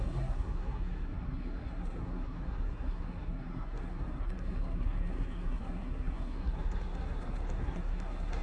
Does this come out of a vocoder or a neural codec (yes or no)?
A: yes